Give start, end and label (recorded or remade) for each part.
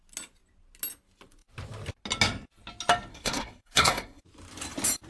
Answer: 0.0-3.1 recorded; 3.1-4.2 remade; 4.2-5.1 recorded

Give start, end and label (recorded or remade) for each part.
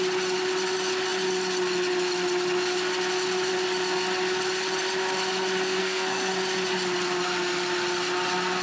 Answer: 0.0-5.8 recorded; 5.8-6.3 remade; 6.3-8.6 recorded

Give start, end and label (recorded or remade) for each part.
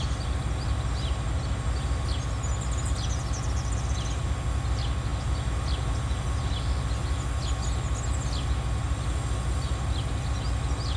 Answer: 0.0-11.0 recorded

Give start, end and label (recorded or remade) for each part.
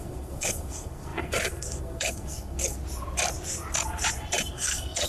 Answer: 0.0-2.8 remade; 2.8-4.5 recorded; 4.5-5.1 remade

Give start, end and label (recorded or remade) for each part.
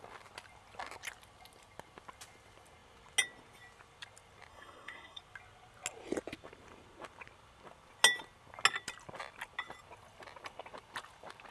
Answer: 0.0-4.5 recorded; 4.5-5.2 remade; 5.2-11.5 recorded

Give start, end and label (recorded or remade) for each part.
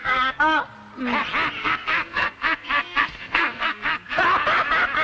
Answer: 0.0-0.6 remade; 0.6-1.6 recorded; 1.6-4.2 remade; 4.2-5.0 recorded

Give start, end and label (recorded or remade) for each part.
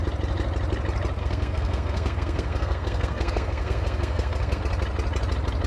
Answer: 0.0-1.2 recorded; 1.2-4.6 remade; 4.6-5.7 recorded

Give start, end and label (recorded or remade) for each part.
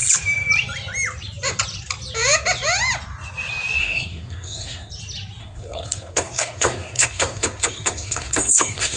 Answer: 0.0-3.8 recorded; 3.8-4.9 remade; 4.9-5.4 recorded; 5.4-9.0 remade